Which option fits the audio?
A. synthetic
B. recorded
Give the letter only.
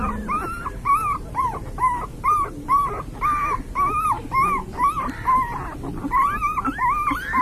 A